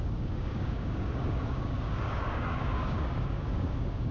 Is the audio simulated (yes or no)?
yes